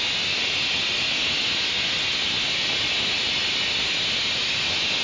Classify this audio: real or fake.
real